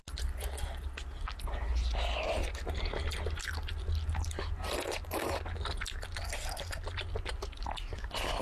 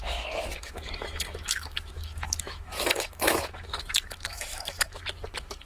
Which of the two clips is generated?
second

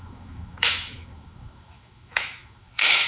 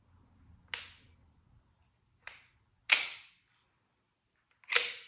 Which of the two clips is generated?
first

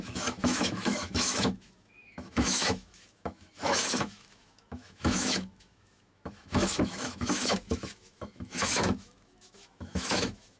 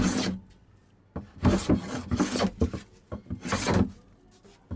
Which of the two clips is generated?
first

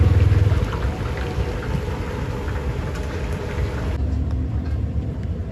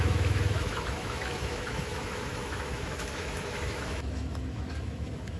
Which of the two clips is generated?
second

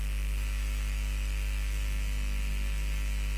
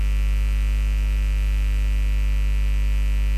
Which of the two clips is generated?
first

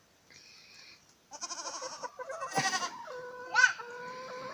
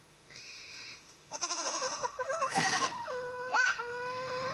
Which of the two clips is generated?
second